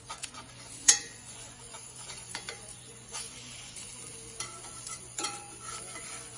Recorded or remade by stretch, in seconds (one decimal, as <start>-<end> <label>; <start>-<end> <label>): 0.0-3.9 remade; 3.9-4.8 recorded; 4.8-6.4 remade